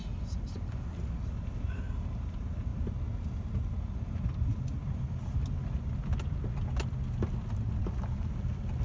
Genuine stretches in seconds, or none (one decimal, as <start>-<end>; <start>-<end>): 0.0-8.8